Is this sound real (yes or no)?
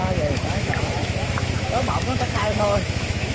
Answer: no